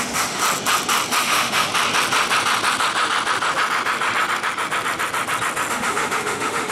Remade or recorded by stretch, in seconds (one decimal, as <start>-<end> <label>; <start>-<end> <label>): 0.0-0.4 remade; 0.4-1.2 recorded; 1.2-1.7 remade; 1.7-5.7 recorded; 5.7-6.7 remade